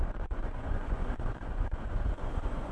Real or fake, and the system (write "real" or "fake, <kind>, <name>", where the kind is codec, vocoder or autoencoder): fake, vocoder, Vocos